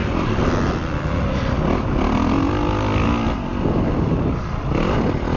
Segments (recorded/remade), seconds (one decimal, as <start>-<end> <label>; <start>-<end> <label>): 0.0-1.4 remade; 1.4-3.5 recorded; 3.5-4.1 remade; 4.1-5.4 recorded